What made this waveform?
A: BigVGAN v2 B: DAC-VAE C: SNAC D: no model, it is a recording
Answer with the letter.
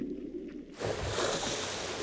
D